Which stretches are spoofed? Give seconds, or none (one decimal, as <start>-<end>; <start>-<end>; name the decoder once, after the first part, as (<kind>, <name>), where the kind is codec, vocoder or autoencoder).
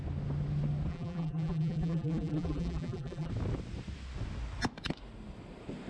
0.9-3.3 (vocoder, BigVGAN v2)